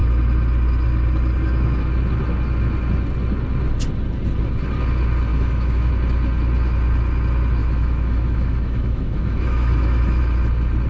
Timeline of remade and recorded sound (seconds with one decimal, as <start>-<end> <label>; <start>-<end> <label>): 0.0-5.3 recorded; 5.3-5.9 remade; 5.9-7.6 recorded; 7.6-10.2 remade; 10.2-10.9 recorded